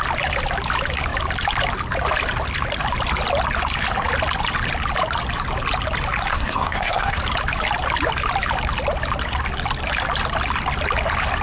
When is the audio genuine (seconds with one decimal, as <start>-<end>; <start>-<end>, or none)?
0.0-6.3; 7.2-11.4